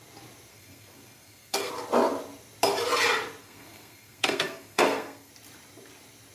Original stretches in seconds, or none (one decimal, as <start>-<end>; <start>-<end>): 0.0-0.5; 1.7-3.4; 5.3-6.3